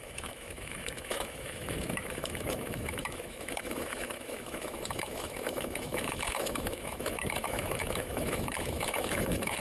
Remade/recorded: remade